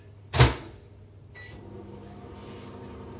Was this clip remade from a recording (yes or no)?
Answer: no